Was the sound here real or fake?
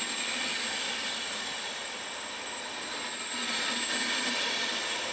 real